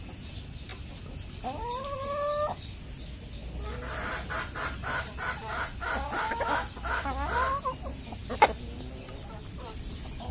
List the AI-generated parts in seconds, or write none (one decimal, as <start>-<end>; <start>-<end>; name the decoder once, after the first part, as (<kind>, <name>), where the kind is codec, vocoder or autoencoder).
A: none